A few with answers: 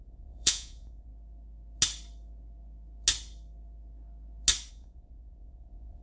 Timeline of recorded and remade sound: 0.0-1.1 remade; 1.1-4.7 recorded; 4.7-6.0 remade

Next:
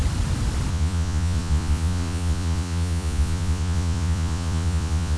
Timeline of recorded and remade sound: 0.0-0.7 recorded; 0.7-5.2 remade

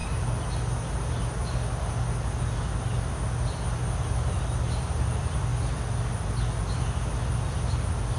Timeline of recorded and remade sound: 0.0-8.2 recorded

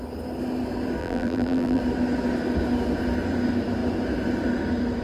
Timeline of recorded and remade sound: 0.0-1.0 recorded; 1.0-1.8 remade; 1.8-5.0 recorded

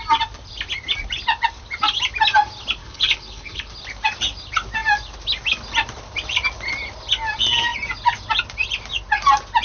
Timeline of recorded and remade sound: 0.0-2.8 recorded; 2.8-3.7 remade; 3.7-9.6 recorded

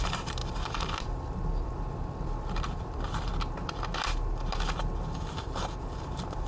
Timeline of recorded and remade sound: 0.0-0.4 remade; 0.4-1.0 recorded; 1.0-3.3 remade; 3.3-5.8 recorded; 5.8-6.5 remade